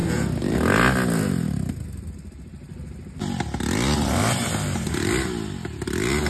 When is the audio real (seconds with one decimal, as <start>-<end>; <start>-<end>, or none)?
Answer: 0.0-6.3